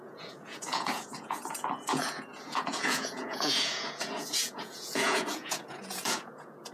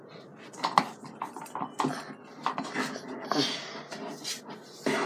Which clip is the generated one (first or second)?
first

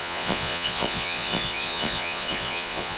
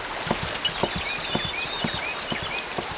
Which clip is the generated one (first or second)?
first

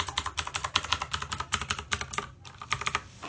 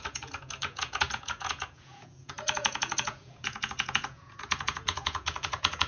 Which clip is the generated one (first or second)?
second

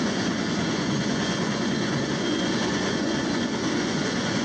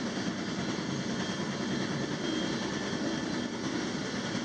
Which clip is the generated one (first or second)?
first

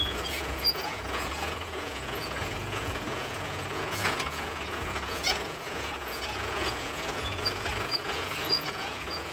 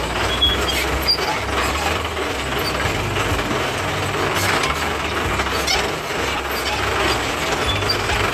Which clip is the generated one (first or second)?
first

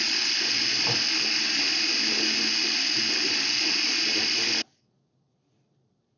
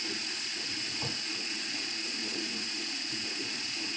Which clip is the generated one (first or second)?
second